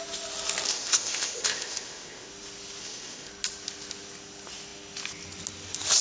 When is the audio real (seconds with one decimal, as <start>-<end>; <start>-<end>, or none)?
0.0-0.7; 2.3-2.8; 3.3-6.0